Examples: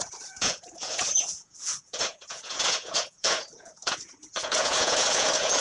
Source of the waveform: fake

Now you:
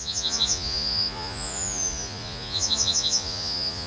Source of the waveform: fake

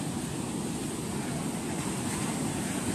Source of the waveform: real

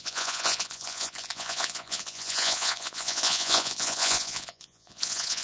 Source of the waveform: fake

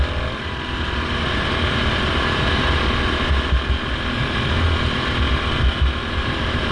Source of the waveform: real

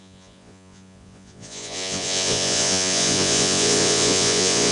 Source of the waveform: fake